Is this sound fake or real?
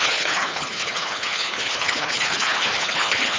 fake